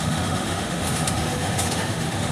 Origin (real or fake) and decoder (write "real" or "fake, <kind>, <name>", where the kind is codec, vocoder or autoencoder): fake, autoencoder, DAC-VAE